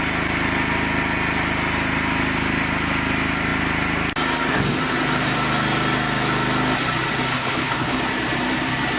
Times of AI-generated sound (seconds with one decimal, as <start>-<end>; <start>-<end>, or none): 7.3-8.0